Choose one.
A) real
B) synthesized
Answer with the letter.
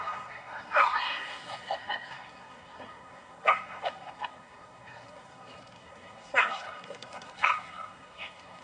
B